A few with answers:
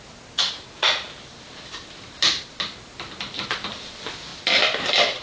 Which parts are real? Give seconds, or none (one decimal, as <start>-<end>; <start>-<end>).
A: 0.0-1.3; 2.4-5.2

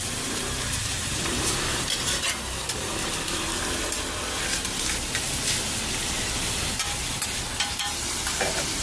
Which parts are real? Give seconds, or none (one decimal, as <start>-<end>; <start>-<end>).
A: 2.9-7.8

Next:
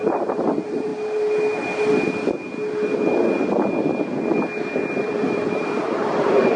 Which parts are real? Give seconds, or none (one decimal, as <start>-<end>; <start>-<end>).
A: 0.9-4.9

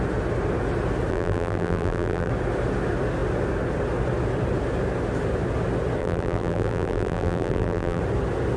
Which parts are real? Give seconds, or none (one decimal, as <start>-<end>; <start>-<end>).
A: 0.0-1.1; 2.3-6.0; 8.0-8.6

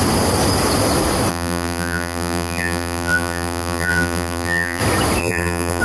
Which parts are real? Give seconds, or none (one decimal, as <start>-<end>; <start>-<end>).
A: 0.0-1.3; 4.8-5.2

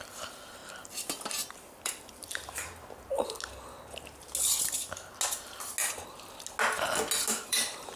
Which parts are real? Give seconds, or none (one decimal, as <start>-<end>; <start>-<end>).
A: 0.6-1.5; 3.1-7.4